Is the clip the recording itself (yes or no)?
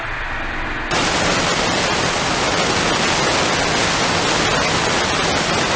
yes